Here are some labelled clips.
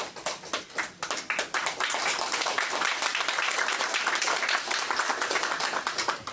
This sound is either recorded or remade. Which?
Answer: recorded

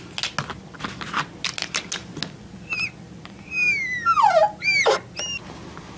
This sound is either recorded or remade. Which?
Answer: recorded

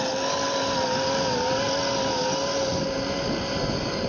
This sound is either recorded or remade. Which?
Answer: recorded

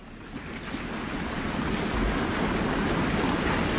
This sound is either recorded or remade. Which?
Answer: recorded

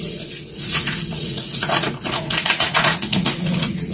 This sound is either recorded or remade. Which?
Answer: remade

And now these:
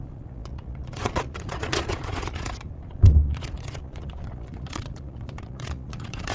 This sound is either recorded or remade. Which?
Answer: remade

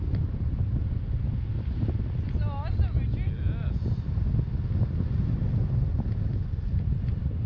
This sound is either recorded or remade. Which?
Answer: recorded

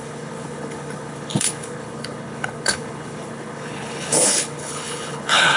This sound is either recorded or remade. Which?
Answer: remade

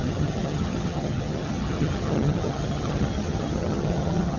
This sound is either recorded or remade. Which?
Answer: remade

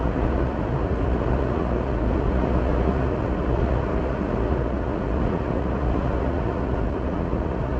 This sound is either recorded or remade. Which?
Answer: remade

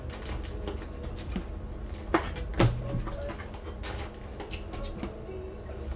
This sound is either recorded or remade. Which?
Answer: recorded